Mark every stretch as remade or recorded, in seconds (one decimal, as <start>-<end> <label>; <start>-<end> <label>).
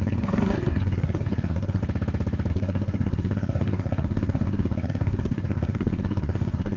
0.0-1.8 remade; 1.8-2.5 recorded; 2.5-6.8 remade